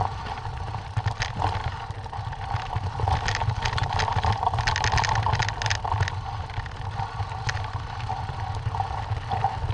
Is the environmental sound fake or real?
real